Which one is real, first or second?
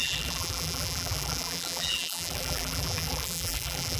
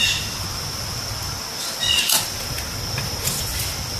second